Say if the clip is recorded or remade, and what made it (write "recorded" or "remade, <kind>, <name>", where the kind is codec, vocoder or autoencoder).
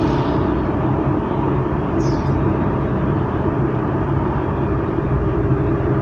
remade, vocoder, BigVGAN v2